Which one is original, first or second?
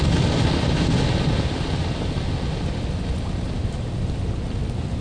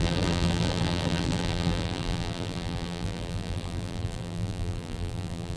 first